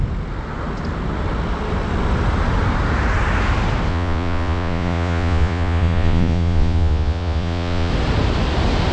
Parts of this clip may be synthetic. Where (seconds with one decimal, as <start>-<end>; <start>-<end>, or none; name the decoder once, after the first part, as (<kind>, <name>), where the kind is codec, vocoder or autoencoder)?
3.9-7.9 (vocoder, Vocos)

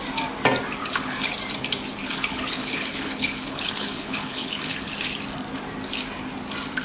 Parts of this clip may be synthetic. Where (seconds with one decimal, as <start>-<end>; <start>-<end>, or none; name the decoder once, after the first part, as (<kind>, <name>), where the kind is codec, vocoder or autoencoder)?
0.8-1.3 (codec, HILCodec); 2.0-4.9

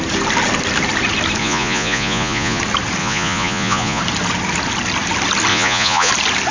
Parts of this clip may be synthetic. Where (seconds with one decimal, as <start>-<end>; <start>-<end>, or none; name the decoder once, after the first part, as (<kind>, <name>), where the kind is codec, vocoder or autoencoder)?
1.4-2.6 (vocoder, Vocos); 3.0-4.0; 5.5-6.1